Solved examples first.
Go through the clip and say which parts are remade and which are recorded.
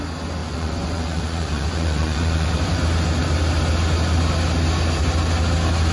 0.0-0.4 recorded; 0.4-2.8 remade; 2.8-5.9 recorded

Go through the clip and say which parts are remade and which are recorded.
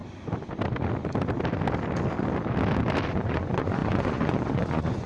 0.0-3.1 recorded; 3.1-5.1 remade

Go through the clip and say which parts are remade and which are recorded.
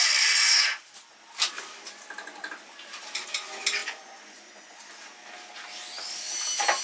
0.0-3.8 recorded; 3.8-4.8 remade; 4.8-6.8 recorded